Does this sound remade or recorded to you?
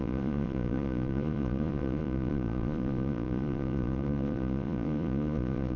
remade